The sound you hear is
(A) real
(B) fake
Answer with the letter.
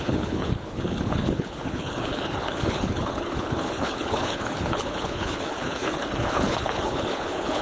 B